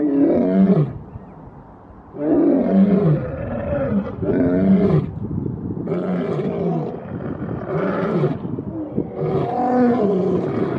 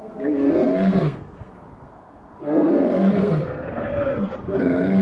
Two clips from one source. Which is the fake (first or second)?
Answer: second